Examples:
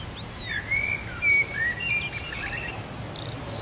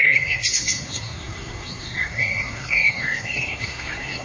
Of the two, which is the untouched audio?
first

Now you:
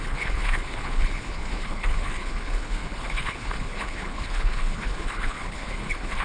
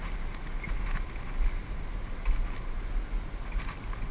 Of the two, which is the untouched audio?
second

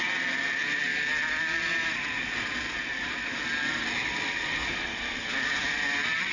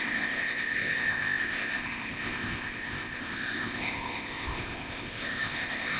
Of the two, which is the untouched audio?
first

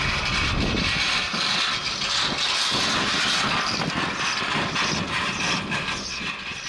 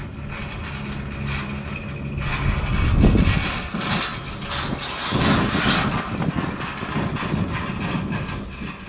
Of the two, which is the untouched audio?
second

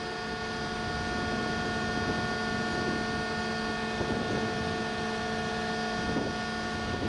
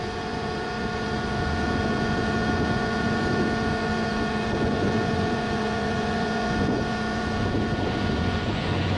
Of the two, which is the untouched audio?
first